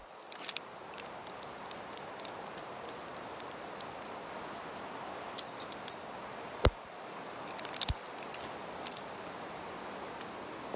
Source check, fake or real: real